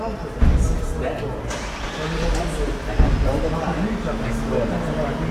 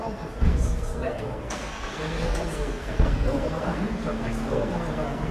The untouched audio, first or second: first